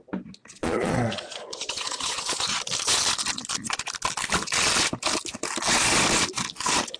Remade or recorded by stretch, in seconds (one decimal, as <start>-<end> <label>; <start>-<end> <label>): 0.0-0.4 recorded; 0.4-2.6 remade; 2.6-7.0 recorded